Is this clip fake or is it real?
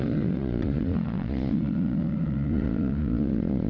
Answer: fake